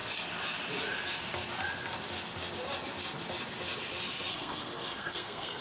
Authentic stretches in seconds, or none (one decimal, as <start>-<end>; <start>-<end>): 0.0-4.3